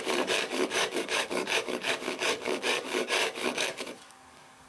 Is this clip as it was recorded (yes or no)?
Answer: no